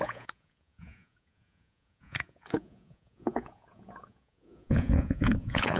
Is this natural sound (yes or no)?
no